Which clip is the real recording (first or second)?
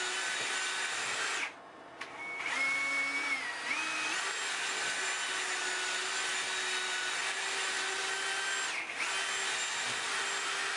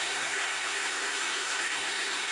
first